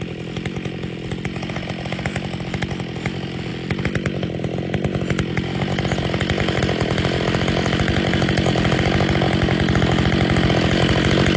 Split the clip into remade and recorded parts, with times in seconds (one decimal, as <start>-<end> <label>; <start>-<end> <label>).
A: 0.0-11.4 recorded